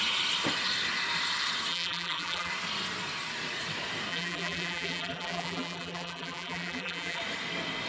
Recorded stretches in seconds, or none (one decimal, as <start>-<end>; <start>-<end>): 0.0-1.7; 2.5-4.1; 7.2-7.9